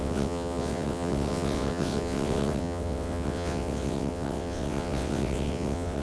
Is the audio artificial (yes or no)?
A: yes